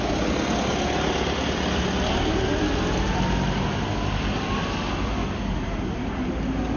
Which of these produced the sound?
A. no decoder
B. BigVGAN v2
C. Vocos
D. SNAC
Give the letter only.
A